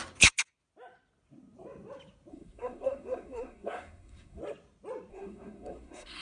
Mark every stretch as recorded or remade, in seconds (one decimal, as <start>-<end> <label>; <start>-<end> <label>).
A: 0.0-2.3 recorded; 2.3-4.4 remade; 4.4-5.1 recorded; 5.1-6.2 remade